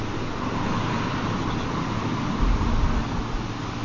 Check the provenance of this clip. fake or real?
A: real